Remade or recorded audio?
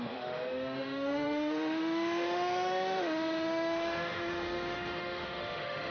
remade